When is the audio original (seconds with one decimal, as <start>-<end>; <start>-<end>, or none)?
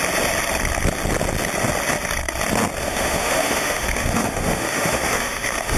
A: 0.0-2.8